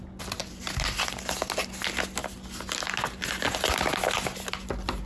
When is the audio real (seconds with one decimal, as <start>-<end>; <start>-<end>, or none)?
0.0-0.4; 1.4-5.1